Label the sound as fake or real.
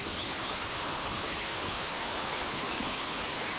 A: fake